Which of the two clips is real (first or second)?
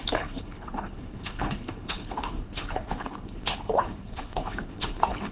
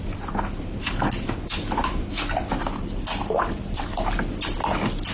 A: second